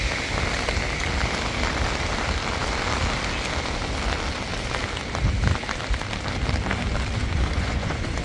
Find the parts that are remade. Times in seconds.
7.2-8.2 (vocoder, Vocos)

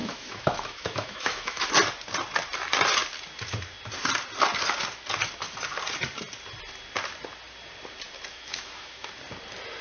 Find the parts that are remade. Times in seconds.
0.0-1.7 (autoencoder, DAC-VAE); 8.3-9.1